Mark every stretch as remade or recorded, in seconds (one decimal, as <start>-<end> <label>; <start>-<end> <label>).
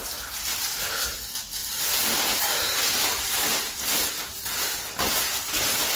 0.0-0.5 recorded; 0.5-1.0 remade; 1.0-6.0 recorded